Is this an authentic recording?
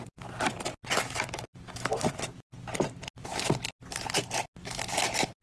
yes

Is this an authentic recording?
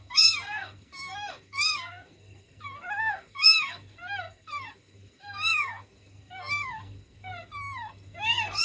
no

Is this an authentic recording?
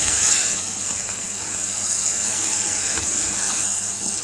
no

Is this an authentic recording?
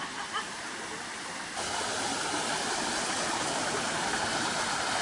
yes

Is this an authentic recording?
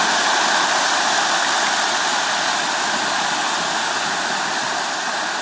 yes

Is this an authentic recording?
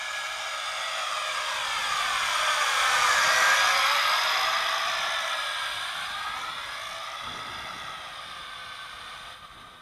yes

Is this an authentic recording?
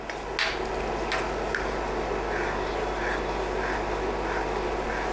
yes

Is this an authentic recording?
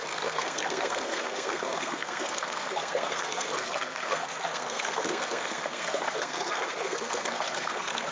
no